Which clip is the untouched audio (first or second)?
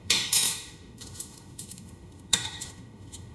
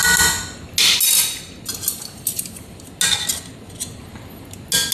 second